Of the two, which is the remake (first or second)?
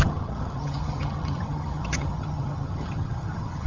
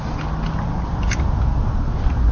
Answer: first